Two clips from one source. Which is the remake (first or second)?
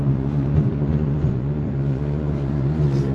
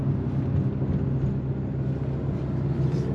first